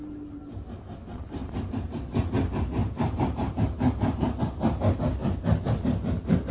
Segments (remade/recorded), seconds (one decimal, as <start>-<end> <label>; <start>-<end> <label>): 0.0-1.4 recorded; 1.4-2.0 remade; 2.0-2.8 recorded; 2.8-4.4 remade; 4.4-6.5 recorded